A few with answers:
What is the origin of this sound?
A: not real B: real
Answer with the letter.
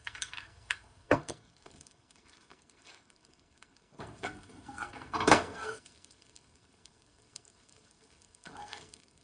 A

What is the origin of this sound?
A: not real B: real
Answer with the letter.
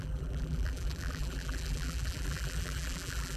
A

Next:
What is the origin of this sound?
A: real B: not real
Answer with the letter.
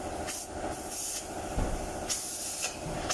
A